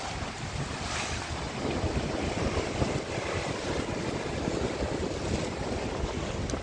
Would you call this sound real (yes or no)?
yes